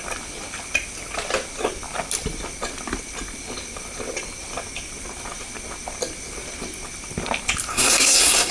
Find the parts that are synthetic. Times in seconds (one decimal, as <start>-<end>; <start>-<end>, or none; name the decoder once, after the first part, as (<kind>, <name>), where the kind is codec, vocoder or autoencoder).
7.7-8.5 (codec, SNAC)